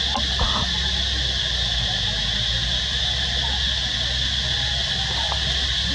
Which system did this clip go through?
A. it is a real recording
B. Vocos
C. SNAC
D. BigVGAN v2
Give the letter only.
A